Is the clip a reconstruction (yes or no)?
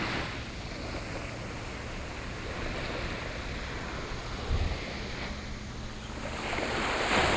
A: no